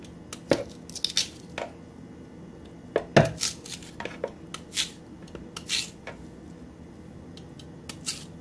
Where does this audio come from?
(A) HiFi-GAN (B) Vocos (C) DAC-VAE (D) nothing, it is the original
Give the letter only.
D